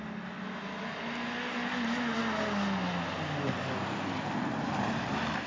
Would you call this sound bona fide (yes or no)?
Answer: yes